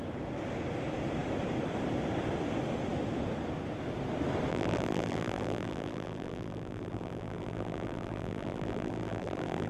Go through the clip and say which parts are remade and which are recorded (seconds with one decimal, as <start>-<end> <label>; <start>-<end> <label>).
0.0-4.5 recorded; 4.5-9.7 remade